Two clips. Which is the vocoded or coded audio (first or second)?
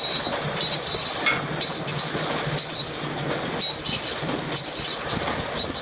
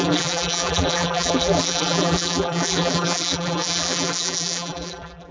second